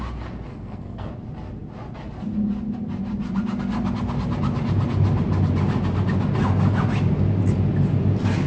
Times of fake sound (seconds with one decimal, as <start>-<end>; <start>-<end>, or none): 0.5-1.1